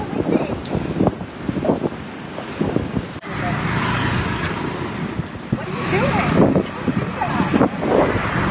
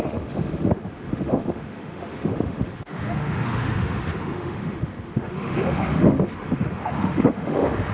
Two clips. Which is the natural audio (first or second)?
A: first